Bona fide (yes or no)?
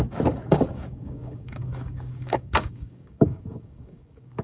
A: no